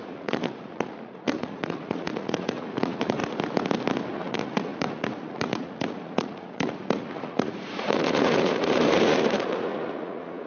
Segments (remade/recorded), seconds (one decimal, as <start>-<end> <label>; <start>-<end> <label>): 0.0-3.2 remade; 3.2-4.1 recorded; 4.1-10.5 remade

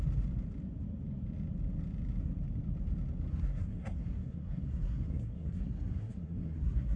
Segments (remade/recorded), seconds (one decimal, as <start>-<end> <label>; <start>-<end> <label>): 0.0-3.3 recorded; 3.3-7.0 remade

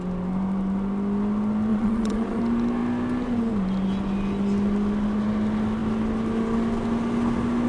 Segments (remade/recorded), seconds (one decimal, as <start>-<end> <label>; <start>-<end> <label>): 0.0-1.7 recorded; 1.7-2.4 remade; 2.4-7.7 recorded

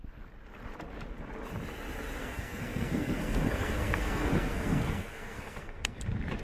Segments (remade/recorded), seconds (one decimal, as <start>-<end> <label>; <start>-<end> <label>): 0.0-2.2 recorded; 2.2-6.0 remade; 6.0-6.4 recorded